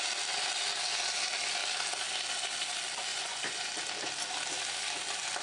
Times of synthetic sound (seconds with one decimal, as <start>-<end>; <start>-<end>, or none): 3.1-3.7